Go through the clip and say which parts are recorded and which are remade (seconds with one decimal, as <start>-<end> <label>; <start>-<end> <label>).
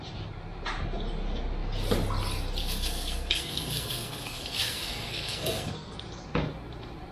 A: 0.0-2.6 recorded; 2.6-6.0 remade; 6.0-7.1 recorded